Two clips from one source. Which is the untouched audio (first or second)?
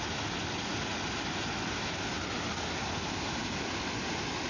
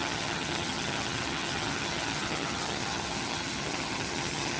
first